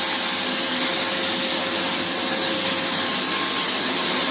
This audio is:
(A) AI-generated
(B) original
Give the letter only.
B